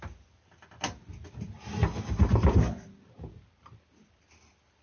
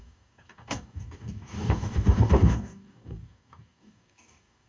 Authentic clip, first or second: first